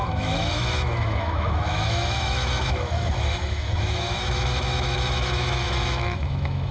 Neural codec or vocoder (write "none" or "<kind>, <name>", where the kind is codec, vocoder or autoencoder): autoencoder, DAC-VAE